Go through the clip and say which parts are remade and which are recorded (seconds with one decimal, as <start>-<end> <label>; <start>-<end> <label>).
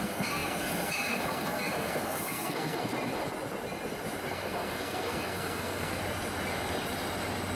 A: 0.0-2.9 remade; 2.9-4.3 recorded; 4.3-6.0 remade; 6.0-7.6 recorded